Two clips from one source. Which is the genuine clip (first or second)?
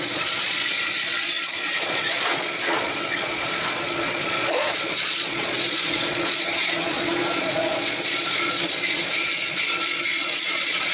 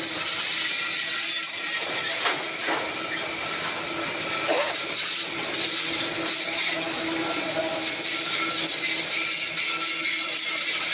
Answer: second